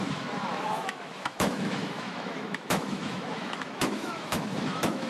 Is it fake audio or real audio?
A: fake